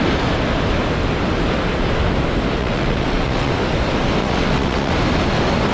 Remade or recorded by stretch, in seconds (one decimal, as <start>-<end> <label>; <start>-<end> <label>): 0.0-2.6 recorded; 2.6-3.5 remade; 3.5-4.2 recorded; 4.2-4.9 remade; 4.9-5.7 recorded